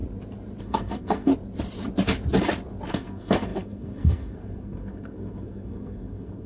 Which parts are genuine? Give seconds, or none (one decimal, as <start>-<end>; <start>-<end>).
0.0-0.6; 1.3-2.9